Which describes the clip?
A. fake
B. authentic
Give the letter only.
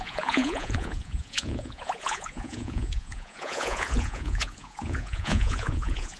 A